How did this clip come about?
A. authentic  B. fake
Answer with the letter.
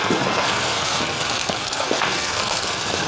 B